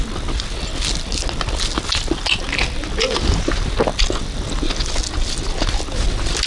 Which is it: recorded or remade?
recorded